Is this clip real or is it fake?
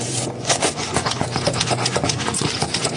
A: fake